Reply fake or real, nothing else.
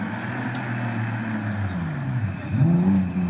real